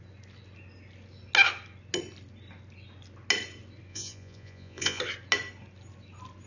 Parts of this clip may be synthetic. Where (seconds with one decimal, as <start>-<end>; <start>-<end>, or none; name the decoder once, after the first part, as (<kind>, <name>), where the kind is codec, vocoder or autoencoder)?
3.9-5.0 (vocoder, Vocos)